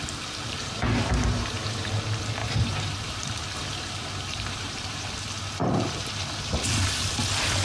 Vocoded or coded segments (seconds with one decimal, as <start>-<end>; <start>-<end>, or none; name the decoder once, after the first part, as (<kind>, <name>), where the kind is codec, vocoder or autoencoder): 0.6-2.0 (vocoder, BigVGAN v2); 2.4-4.9